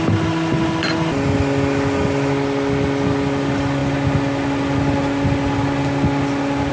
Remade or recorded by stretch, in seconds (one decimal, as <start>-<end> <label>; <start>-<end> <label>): 0.0-6.7 recorded